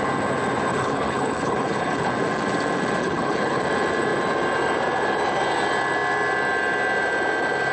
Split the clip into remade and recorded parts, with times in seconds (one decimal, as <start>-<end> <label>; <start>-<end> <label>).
0.0-0.7 recorded; 0.7-2.1 remade; 2.1-3.0 recorded; 3.0-3.6 remade; 3.6-7.7 recorded